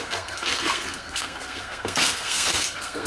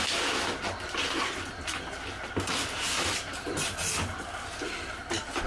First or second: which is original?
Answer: second